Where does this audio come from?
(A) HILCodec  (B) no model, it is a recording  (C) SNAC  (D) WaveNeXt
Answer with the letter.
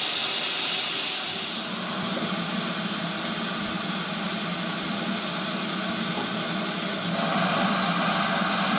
B